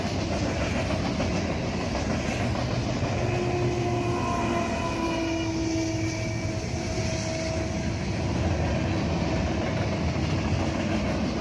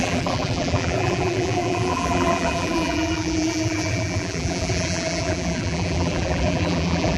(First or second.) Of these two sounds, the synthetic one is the second